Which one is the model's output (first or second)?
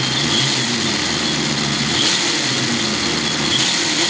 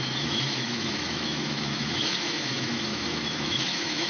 second